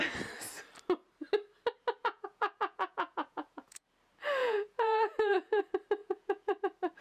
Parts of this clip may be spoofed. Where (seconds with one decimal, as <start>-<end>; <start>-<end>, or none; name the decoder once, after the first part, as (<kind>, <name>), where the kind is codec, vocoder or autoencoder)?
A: 2.0-3.8 (vocoder, Vocos); 4.4-5.6; 6.0-6.6